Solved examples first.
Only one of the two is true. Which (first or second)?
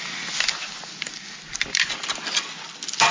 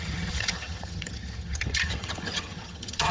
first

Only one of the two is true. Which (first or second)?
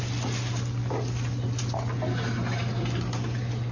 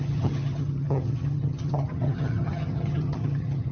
first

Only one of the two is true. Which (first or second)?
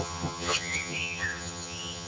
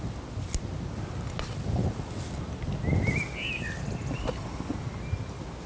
second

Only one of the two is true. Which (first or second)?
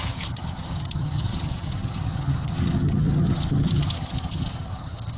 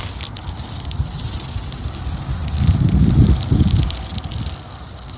second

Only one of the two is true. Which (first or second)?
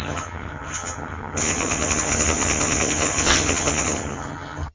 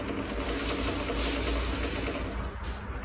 second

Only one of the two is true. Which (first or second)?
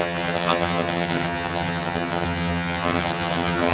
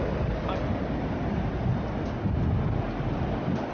second